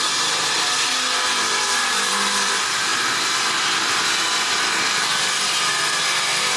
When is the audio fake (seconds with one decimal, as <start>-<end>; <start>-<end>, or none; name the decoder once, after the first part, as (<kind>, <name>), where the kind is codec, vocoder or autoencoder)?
none